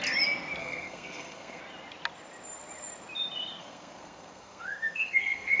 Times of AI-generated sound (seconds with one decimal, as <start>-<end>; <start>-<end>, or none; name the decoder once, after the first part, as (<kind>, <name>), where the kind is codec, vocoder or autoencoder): 0.6-1.6 (codec, SNAC); 3.6-5.6